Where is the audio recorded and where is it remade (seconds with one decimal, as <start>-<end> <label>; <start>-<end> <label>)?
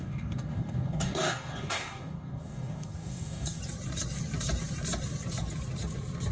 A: 0.0-3.6 remade; 3.6-6.3 recorded